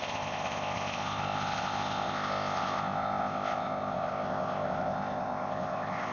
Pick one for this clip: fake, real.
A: fake